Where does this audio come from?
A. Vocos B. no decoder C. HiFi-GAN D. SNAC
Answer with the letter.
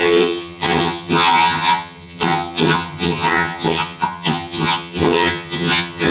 C